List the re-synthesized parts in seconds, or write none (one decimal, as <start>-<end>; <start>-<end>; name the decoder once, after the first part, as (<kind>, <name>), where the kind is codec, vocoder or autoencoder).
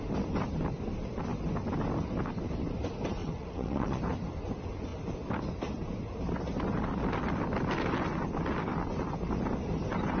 3.2-4.0 (vocoder, WaveNeXt)